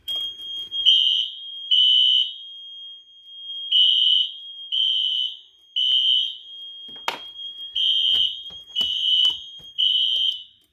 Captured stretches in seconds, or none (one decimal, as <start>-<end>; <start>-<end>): 1.8-3.5; 5.2-7.2